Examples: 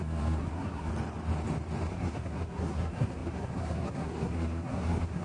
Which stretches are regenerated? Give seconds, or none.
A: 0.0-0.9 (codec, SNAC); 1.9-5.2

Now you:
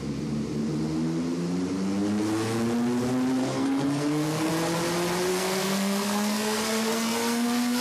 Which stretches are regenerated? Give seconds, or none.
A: 3.4-4.5 (codec, SNAC); 5.3-7.8

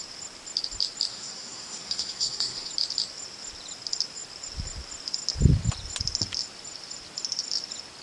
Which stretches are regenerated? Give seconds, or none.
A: 1.1-2.7 (codec, SNAC)

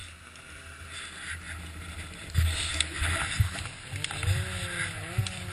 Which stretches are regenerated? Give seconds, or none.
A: none

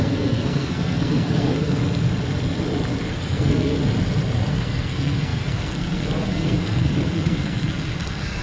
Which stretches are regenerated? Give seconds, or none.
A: 0.0-1.8 (codec, SNAC); 3.1-3.8; 4.5-8.4